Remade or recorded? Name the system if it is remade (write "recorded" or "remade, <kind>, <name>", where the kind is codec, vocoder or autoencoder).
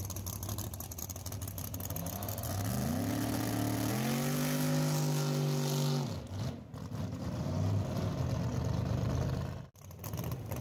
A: recorded